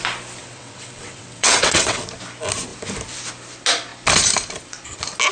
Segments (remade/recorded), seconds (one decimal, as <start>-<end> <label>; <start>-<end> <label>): 0.0-0.4 recorded; 0.4-2.0 remade; 2.0-5.3 recorded

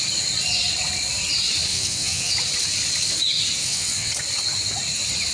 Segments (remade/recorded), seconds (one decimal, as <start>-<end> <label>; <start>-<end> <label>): 0.0-1.7 recorded; 1.7-2.3 remade; 2.3-3.6 recorded; 3.6-4.1 remade; 4.1-5.3 recorded

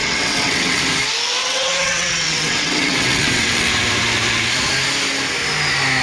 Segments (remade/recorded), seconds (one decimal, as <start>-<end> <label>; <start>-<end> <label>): 0.0-0.8 remade; 0.8-1.4 recorded; 1.4-3.7 remade; 3.7-6.0 recorded

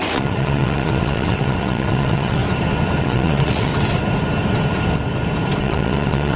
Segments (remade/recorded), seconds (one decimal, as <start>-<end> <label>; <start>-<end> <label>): 0.0-2.4 remade; 2.4-3.0 recorded; 3.0-3.7 remade; 3.7-5.6 recorded; 5.6-6.4 remade